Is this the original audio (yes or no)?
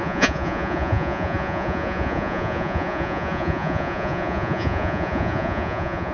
no